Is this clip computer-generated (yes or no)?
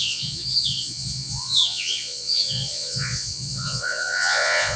yes